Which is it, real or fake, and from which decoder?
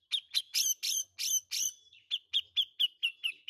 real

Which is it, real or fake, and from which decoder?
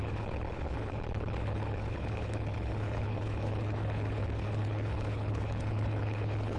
fake, codec, HILCodec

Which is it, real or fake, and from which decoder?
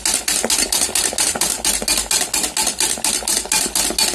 real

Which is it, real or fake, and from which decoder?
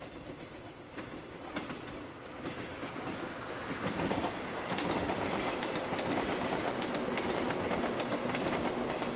real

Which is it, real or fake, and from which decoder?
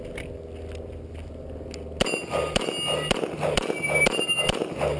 real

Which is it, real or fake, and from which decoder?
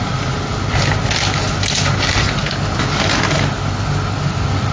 real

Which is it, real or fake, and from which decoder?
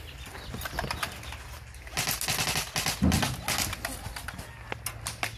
real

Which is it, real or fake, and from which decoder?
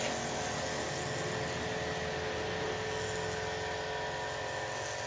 real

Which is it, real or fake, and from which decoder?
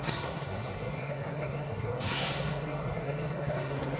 fake, codec, SNAC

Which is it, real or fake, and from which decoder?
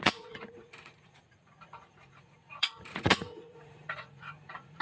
fake, vocoder, Vocos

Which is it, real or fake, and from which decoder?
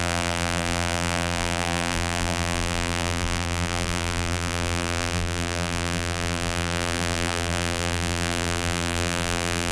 fake, vocoder, BigVGAN v2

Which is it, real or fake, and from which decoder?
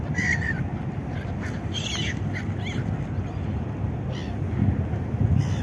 real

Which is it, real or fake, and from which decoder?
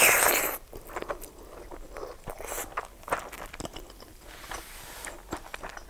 real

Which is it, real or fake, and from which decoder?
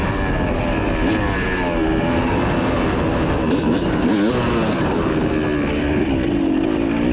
real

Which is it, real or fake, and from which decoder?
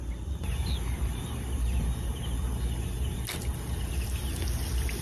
real